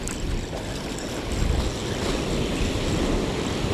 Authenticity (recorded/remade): recorded